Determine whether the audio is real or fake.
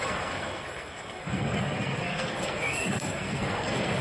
fake